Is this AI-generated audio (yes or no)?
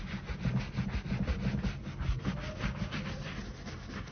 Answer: no